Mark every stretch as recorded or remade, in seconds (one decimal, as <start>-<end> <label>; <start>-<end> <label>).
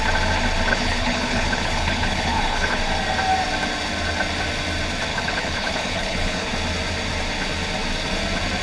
0.0-0.7 recorded; 0.7-2.8 remade; 2.8-5.1 recorded; 5.1-6.5 remade; 6.5-8.6 recorded